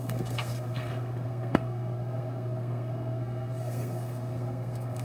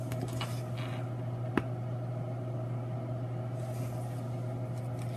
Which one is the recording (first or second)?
second